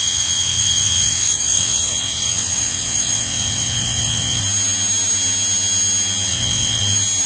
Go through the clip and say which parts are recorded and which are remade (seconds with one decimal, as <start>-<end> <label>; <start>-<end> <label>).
0.0-4.4 remade; 4.4-6.3 recorded; 6.3-6.8 remade; 6.8-7.3 recorded